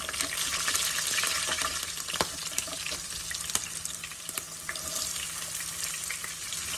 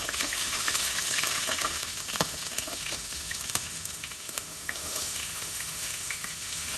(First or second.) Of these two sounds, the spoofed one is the second